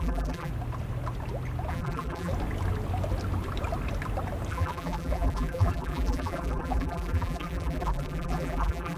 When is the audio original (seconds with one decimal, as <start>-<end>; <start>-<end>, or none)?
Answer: 0.5-1.7; 2.3-4.5